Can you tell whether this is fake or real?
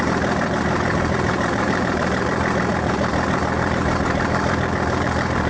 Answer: fake